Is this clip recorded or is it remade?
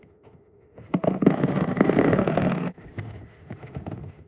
remade